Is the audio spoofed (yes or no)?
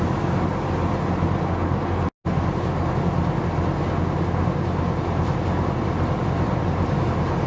no